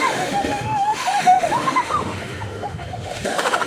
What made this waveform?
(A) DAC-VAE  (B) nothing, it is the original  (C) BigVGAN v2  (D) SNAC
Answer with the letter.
A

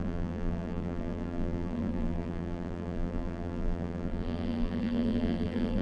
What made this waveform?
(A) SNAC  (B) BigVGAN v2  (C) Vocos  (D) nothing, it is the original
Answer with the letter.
B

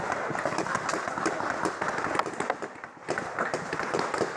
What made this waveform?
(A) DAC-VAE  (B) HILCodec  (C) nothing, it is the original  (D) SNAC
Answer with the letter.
C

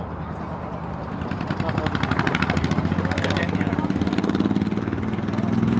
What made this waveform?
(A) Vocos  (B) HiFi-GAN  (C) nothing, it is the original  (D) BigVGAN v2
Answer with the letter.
C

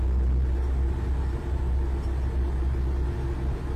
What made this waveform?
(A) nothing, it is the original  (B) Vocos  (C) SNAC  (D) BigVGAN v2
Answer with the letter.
A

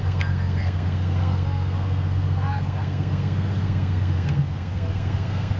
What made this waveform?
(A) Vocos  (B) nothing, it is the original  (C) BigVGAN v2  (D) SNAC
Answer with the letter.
D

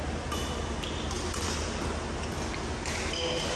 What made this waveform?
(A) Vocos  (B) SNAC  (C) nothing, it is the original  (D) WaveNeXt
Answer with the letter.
C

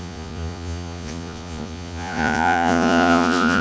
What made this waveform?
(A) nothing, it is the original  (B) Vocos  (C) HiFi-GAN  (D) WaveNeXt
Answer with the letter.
B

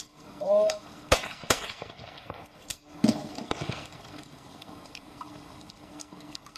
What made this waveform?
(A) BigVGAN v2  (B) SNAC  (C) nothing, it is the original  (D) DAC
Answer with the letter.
B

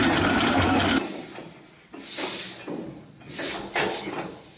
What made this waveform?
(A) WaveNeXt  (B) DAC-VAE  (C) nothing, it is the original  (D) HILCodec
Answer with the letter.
C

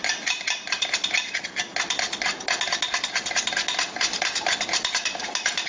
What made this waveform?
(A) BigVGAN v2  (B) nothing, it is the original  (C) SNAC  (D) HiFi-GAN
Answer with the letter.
B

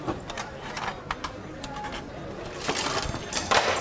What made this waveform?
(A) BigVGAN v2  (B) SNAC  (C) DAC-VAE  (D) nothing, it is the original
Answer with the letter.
D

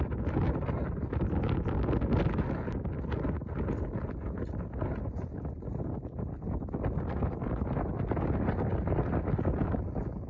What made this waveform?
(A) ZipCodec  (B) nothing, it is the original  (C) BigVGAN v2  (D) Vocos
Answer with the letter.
B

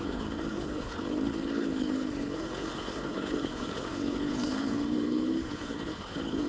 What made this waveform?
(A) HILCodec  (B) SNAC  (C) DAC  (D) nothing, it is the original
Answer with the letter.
A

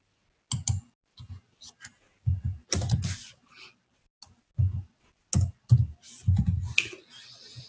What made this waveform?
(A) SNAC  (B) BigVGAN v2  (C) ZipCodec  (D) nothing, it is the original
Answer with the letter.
D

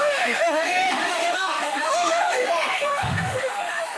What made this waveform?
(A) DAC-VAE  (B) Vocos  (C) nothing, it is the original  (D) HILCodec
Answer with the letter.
A